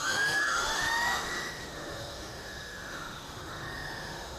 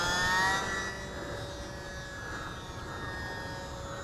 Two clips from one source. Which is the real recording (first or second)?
second